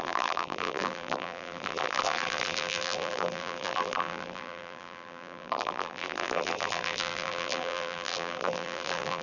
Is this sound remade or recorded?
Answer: remade